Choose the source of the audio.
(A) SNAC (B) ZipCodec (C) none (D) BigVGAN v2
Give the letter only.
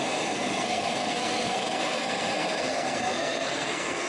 A